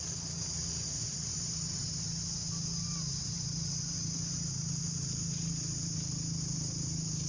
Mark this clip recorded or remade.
recorded